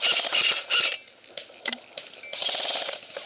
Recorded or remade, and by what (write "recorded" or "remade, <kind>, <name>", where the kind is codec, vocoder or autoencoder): recorded